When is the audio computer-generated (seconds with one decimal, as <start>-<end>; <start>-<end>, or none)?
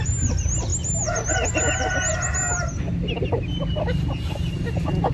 none